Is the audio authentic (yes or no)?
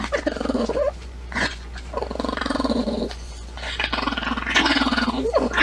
no